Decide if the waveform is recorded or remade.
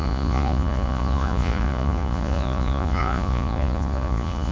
remade